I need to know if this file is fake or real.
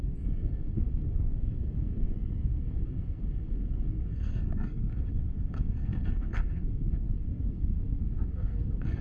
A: fake